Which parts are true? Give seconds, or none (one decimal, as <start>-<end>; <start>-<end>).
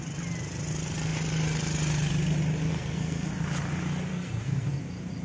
0.0-2.7; 3.3-4.1; 4.8-5.2